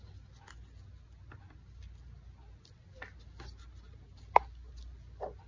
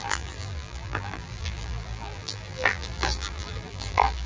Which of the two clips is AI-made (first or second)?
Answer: second